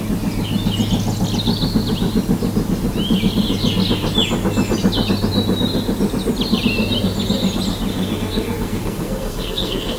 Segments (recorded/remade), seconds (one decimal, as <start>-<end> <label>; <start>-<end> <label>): 0.0-7.9 recorded; 7.9-10.0 remade